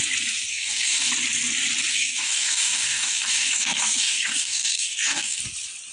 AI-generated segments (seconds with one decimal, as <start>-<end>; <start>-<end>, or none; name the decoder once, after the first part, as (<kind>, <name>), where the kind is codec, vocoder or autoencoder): 0.5-1.1 (codec, DAC); 1.9-5.4